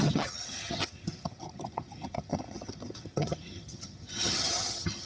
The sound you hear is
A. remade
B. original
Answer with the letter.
A